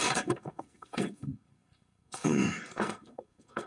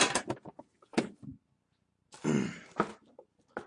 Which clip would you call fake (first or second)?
first